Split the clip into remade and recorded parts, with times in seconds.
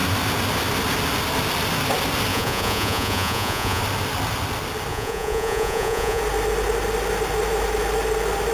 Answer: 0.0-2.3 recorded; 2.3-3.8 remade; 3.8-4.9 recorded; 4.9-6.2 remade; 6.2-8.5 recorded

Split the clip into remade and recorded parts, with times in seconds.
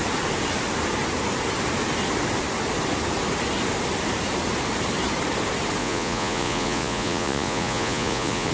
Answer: 0.0-5.8 recorded; 5.8-8.5 remade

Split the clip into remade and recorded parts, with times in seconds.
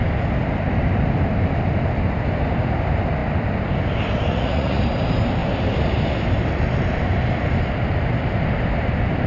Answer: 0.0-4.3 recorded; 4.3-4.8 remade; 4.8-9.3 recorded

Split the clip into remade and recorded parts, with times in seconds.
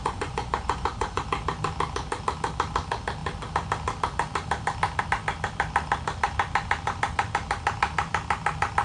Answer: 0.0-1.2 remade; 1.2-8.8 recorded